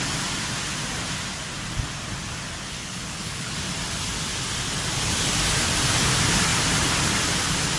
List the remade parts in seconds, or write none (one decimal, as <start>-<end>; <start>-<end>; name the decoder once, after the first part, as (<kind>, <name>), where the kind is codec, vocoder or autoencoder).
2.7-3.5 (codec, HILCodec)